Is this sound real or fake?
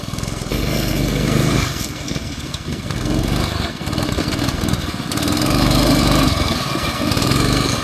fake